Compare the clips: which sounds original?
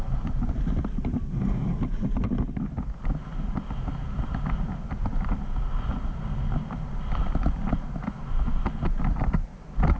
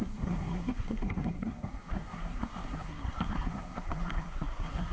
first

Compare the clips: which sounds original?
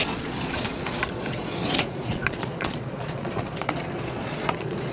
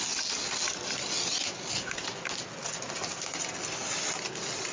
second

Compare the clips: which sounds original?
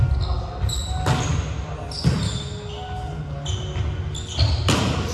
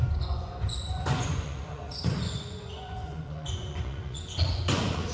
first